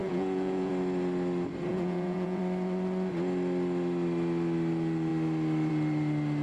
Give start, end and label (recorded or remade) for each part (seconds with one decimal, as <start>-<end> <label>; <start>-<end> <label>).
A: 0.0-0.7 remade; 0.7-1.7 recorded; 1.7-2.4 remade; 2.4-6.4 recorded